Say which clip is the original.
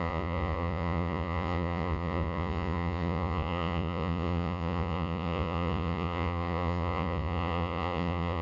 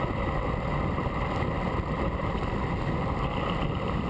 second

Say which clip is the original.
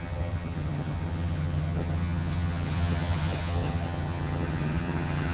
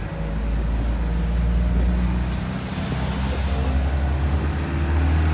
second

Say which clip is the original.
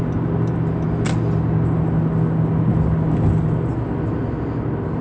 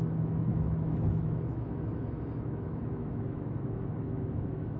first